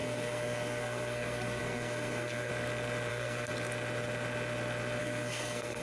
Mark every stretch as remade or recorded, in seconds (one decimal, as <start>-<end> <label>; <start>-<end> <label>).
0.0-2.5 remade; 2.5-3.1 recorded; 3.1-3.5 remade; 3.5-5.0 recorded; 5.0-5.8 remade